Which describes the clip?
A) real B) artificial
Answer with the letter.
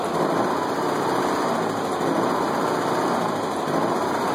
A